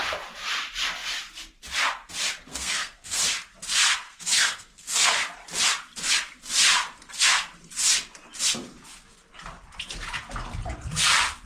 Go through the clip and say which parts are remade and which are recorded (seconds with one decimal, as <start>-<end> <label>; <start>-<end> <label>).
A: 0.0-2.5 recorded; 2.5-3.2 remade; 3.2-3.8 recorded; 3.8-5.1 remade; 5.1-11.5 recorded